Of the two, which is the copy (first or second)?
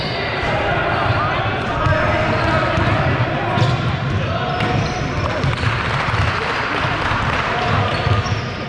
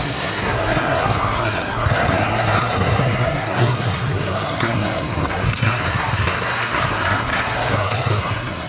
second